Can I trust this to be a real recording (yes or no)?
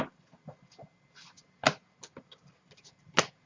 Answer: yes